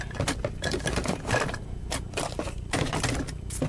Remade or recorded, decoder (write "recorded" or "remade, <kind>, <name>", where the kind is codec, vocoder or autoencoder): recorded